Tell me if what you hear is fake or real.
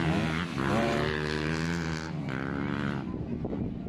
real